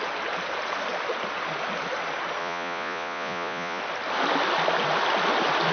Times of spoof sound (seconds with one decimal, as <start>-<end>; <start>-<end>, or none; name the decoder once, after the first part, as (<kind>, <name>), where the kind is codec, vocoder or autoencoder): 2.4-3.8 (vocoder, Vocos)